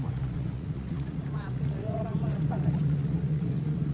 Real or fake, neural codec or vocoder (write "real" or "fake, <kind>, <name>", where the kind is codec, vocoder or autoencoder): fake, vocoder, Vocos